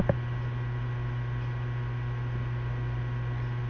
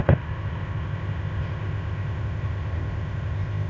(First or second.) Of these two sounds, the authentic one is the first